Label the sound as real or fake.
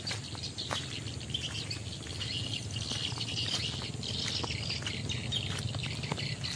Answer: real